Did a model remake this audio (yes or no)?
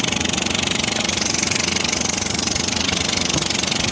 yes